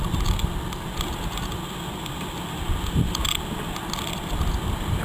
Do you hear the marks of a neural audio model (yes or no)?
no